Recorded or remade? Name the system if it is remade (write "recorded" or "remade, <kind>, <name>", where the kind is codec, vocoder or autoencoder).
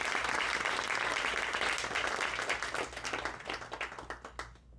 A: recorded